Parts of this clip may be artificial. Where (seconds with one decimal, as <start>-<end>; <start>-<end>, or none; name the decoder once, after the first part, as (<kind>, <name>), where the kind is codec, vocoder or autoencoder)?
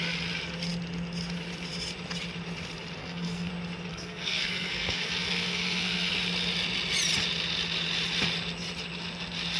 3.0-3.5 (codec, SNAC); 3.9-6.1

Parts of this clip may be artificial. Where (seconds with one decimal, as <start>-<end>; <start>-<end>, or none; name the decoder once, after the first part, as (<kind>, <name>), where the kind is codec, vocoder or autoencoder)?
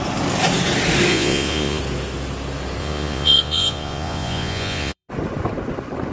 1.1-1.8 (vocoder, Vocos); 2.8-5.1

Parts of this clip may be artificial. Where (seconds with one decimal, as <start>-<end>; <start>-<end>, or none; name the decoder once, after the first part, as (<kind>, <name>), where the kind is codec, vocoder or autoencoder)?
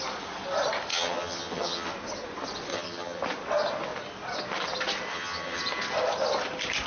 0.9-1.9 (vocoder, HiFi-GAN); 2.7-3.2; 5.1-5.6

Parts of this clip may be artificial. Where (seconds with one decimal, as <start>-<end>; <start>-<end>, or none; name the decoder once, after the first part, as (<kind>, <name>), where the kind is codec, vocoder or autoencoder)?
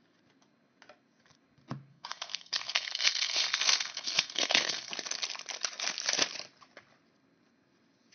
1.9-4.9 (codec, SNAC)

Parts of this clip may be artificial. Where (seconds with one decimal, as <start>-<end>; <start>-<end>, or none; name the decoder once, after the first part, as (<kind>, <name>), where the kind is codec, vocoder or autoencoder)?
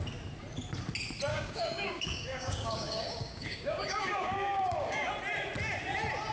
1.3-5.1 (codec, DAC)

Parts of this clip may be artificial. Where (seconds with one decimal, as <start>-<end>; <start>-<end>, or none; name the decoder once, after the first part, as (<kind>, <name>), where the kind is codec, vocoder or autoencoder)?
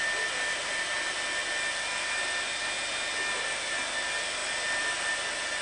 1.4-2.6 (vocoder, BigVGAN v2); 4.4-5.1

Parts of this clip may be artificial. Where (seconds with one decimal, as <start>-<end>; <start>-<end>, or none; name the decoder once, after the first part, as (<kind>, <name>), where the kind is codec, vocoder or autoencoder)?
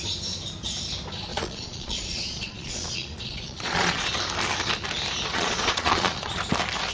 1.3-4.1 (vocoder, Vocos); 5.3-6.4